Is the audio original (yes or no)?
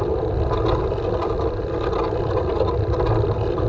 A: yes